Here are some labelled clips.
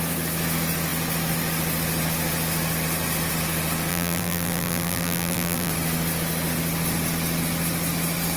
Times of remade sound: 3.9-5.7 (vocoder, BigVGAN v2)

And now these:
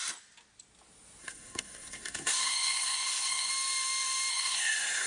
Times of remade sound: 1.2-3.5 (codec, SNAC); 4.3-5.1

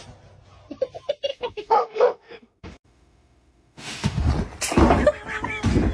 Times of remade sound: 1.3-4.3 (autoencoder, DAC-VAE)

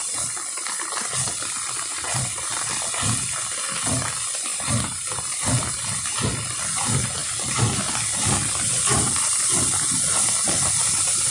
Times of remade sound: none

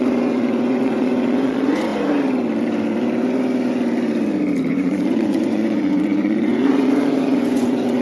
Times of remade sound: 0.0-1.9 (vocoder, Vocos); 4.7-8.0

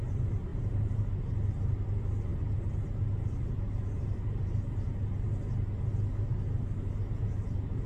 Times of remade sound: 0.5-1.1 (vocoder, BigVGAN v2)

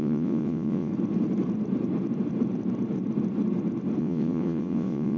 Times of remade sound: 0.0-0.9 (vocoder, WaveNeXt); 4.0-5.2